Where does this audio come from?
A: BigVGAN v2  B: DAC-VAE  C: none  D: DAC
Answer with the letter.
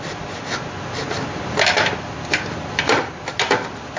C